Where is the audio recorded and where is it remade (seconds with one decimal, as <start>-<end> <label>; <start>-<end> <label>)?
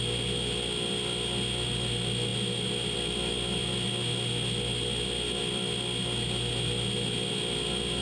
0.0-8.0 recorded